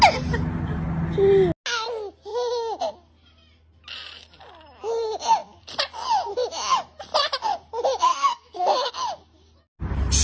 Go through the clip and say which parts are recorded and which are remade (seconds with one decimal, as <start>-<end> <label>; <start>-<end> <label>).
0.0-8.1 recorded; 8.1-8.9 remade; 8.9-10.2 recorded